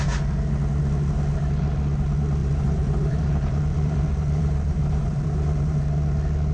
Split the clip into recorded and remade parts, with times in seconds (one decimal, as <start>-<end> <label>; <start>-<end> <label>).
0.0-2.4 recorded; 2.4-5.8 remade; 5.8-6.5 recorded